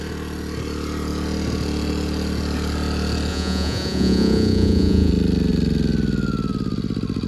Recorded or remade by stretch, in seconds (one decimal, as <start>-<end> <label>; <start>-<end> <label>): 0.0-3.3 recorded; 3.3-5.1 remade; 5.1-7.3 recorded